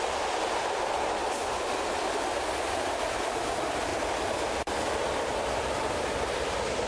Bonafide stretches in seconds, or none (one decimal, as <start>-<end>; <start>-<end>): 3.9-4.9